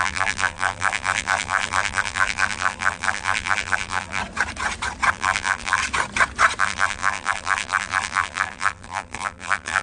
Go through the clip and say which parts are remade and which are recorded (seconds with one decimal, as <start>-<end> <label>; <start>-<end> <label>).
0.0-4.2 remade; 4.2-5.1 recorded; 5.1-5.8 remade; 5.8-6.6 recorded; 6.6-9.8 remade